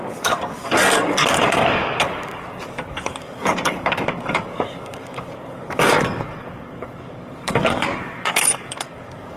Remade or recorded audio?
remade